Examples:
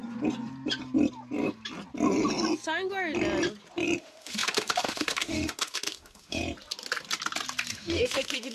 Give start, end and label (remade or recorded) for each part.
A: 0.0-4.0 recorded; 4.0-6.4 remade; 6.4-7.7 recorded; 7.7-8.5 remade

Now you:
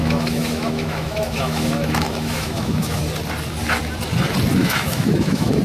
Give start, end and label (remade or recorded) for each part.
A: 0.0-3.0 remade; 3.0-4.6 recorded; 4.6-5.6 remade

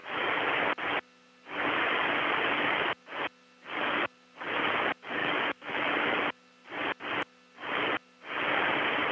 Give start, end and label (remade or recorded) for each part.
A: 0.0-5.2 recorded; 5.2-5.9 remade; 5.9-9.1 recorded

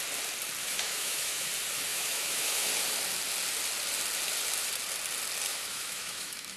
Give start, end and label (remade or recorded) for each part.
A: 0.0-0.6 recorded; 0.6-1.5 remade; 1.5-1.9 recorded; 1.9-2.7 remade; 2.7-5.5 recorded; 5.5-6.6 remade

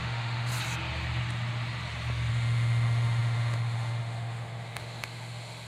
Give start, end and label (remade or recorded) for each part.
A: 0.0-0.5 remade; 0.5-2.3 recorded; 2.3-5.7 remade

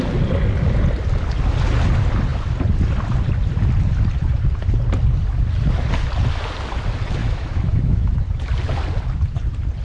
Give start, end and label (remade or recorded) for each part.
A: 0.0-7.2 recorded; 7.2-8.1 remade; 8.1-9.8 recorded